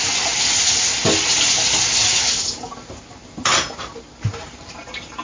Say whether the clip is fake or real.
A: real